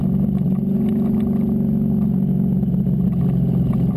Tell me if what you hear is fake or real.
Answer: real